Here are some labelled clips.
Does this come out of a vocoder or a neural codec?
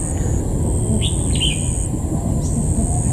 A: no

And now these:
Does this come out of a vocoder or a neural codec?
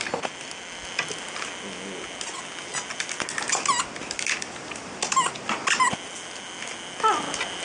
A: no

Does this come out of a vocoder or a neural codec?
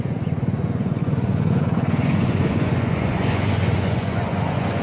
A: yes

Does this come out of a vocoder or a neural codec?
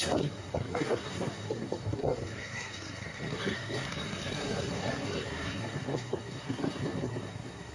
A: yes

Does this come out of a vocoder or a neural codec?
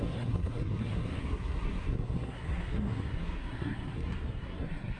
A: yes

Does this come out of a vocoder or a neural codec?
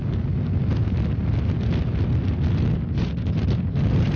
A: no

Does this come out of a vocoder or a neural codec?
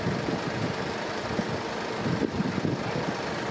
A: no